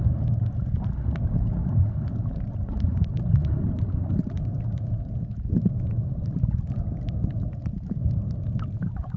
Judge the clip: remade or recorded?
recorded